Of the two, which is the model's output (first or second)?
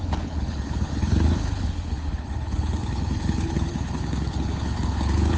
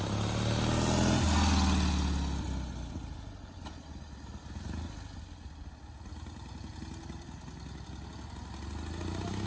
first